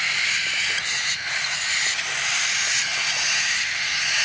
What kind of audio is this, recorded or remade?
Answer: recorded